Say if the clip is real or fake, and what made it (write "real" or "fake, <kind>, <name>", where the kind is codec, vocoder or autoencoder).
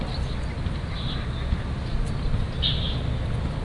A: real